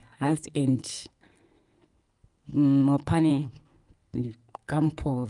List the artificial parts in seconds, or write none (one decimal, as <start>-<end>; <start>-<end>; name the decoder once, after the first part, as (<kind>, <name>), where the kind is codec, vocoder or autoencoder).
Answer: 0.0-2.5 (codec, SNAC); 3.3-5.3